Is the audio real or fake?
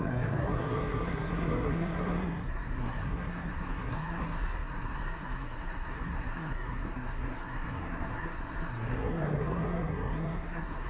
fake